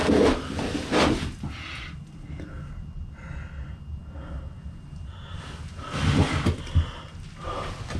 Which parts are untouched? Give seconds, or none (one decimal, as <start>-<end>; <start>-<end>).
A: 0.0-8.0